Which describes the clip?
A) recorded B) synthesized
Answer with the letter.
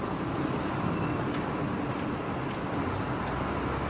A